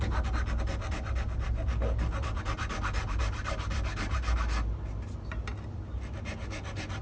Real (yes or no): yes